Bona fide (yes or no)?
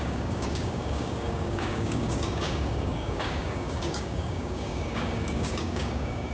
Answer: no